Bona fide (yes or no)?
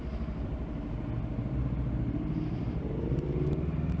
yes